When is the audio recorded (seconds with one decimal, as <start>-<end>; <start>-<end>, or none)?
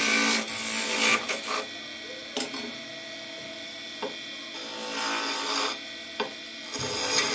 0.0-7.3